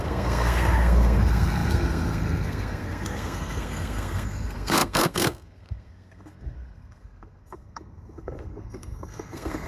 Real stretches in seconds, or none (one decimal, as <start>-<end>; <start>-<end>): none